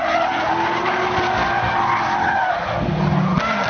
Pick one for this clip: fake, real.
real